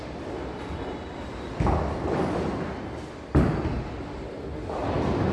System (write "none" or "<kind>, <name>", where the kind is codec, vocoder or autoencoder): none